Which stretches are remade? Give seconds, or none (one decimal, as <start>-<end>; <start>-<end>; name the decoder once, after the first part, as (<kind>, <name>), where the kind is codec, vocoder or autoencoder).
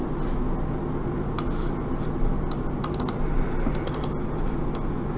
none